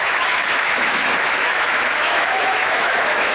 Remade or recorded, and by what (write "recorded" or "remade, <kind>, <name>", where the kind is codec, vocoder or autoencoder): remade, autoencoder, DAC-VAE